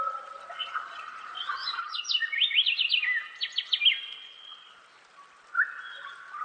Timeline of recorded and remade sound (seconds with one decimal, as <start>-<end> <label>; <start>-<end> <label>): 0.0-0.6 recorded; 0.6-2.0 remade; 2.0-4.2 recorded; 4.2-4.7 remade; 4.7-6.4 recorded